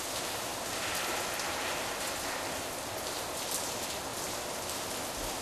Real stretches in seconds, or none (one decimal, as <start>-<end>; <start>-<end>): 0.0-5.4